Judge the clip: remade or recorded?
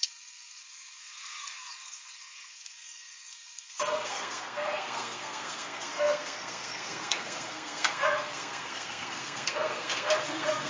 remade